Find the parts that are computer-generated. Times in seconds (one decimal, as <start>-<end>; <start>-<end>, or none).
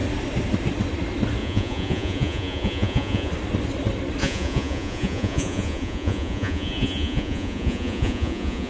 1.4-3.3; 4.2-8.7